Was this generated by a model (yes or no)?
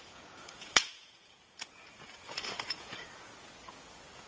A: yes